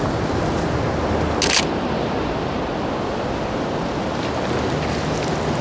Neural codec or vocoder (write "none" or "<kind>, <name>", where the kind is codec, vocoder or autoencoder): none